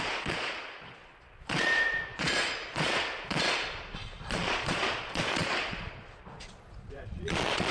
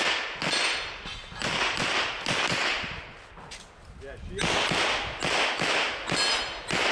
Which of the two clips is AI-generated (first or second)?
first